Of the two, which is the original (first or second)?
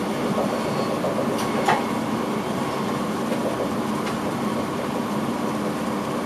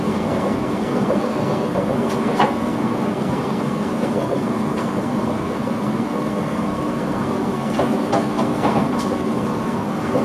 first